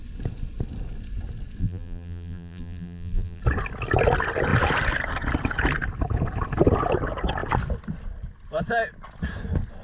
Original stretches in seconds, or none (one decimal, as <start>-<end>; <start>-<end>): 0.0-1.6; 3.4-9.8